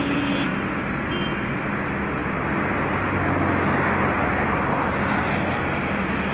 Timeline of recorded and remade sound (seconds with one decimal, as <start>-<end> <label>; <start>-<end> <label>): 0.0-6.3 recorded